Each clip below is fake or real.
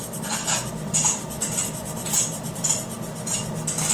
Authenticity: real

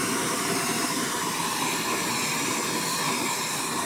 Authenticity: fake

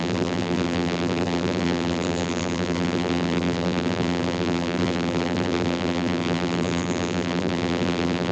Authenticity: fake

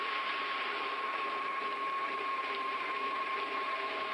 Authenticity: fake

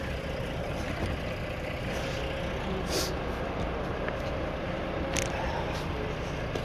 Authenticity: real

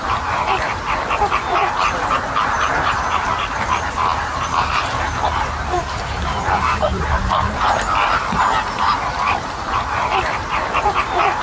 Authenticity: fake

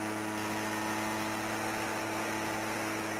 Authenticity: real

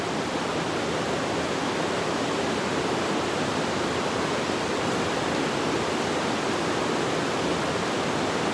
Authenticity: real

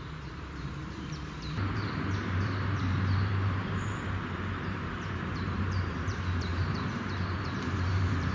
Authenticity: fake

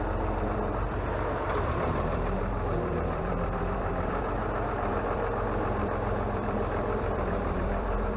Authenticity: fake